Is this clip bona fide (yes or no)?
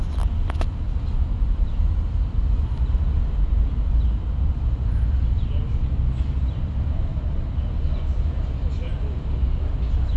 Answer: yes